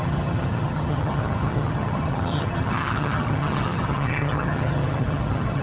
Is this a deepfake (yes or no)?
yes